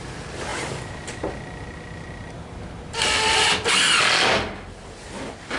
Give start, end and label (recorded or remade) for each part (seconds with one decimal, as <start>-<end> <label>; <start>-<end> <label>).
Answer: 0.0-5.6 recorded